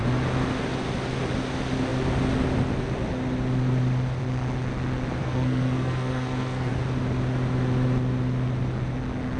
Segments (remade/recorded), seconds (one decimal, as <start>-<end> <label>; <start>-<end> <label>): 0.0-5.2 recorded; 5.2-6.7 remade; 6.7-9.4 recorded